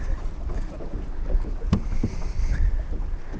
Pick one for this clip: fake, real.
real